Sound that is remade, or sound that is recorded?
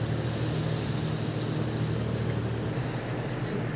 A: recorded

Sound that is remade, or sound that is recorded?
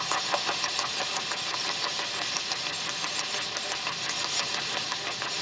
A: recorded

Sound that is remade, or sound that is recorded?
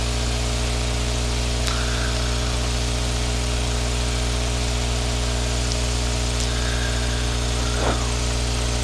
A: recorded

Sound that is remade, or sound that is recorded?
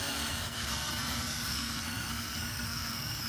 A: remade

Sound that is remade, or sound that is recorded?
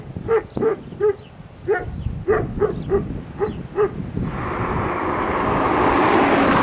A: recorded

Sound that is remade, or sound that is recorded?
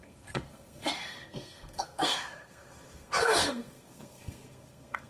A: remade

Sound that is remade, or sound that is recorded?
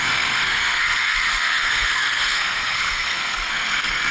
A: remade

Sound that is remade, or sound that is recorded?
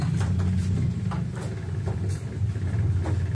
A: recorded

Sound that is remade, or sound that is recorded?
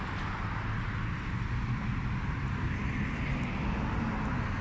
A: recorded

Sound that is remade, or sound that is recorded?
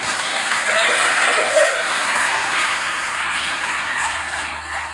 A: remade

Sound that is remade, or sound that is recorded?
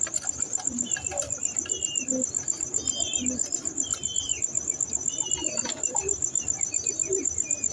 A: recorded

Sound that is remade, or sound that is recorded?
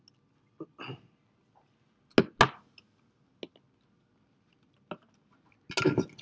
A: recorded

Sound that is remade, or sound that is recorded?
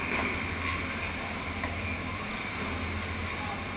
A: recorded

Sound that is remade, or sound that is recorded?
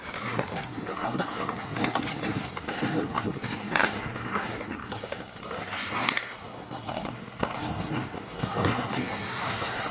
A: remade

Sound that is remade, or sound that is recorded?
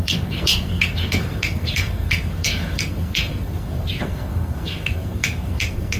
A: remade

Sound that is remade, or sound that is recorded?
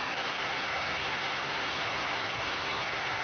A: remade